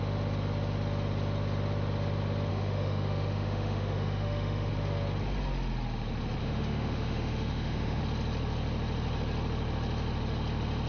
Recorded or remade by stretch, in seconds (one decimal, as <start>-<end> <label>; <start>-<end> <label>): 0.0-2.5 recorded; 2.5-4.7 remade; 4.7-6.4 recorded; 6.4-8.0 remade; 8.0-10.9 recorded